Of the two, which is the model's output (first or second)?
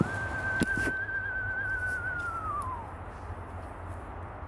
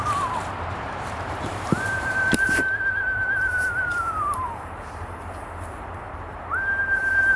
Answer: second